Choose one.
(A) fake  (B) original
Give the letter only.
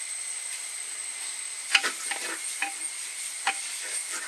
B